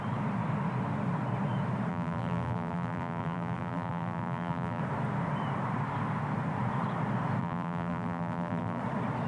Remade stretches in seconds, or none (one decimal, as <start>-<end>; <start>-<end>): 1.9-4.8; 7.4-8.8